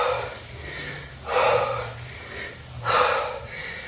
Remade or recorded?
recorded